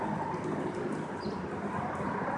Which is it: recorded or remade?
recorded